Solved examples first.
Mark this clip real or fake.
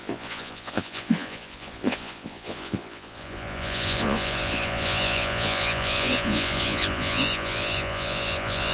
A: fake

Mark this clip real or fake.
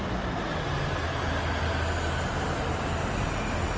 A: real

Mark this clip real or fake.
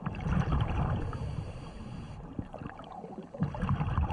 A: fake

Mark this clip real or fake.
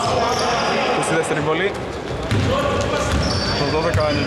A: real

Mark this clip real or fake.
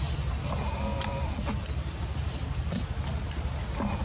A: real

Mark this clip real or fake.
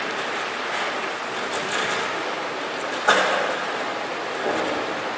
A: fake